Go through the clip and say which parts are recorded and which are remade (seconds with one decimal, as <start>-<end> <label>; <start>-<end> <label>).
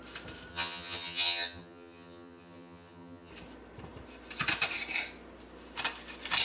0.0-0.5 recorded; 0.5-3.3 remade; 3.3-6.4 recorded